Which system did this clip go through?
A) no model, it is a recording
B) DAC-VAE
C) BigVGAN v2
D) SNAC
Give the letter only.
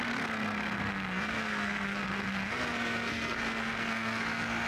D